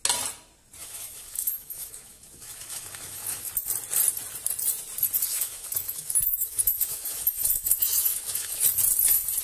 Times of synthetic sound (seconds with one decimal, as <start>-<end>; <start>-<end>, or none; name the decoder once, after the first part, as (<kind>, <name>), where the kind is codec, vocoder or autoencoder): 0.8-3.5 (autoencoder, DAC-VAE); 5.3-8.6